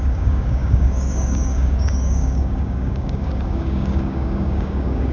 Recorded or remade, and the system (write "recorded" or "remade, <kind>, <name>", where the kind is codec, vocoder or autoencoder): remade, codec, DAC